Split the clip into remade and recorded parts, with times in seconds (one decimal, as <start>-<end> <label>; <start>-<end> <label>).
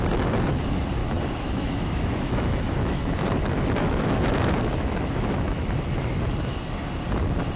0.0-1.0 recorded; 1.0-5.6 remade; 5.6-7.6 recorded